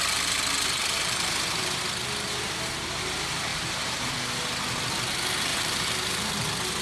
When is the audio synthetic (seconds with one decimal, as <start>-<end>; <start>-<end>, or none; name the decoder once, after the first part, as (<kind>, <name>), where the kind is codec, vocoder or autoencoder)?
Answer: 0.8-1.8 (vocoder, BigVGAN v2); 3.5-4.1; 5.5-6.3